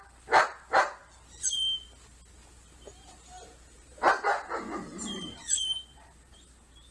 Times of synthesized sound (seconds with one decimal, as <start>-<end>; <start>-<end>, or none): 0.0-1.0; 3.8-6.9